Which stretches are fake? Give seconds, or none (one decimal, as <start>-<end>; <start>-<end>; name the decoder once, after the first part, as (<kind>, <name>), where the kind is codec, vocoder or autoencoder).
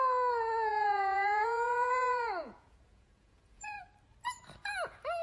0.7-3.8 (vocoder, Vocos)